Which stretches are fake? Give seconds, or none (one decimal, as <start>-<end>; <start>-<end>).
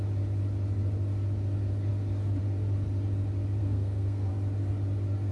3.6-4.3